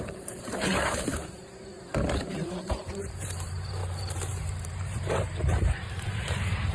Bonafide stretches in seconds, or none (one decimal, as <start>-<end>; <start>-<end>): none